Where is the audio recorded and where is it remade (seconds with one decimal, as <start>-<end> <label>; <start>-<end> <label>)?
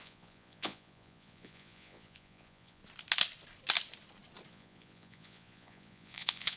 0.0-2.8 remade; 2.8-4.5 recorded; 4.5-6.6 remade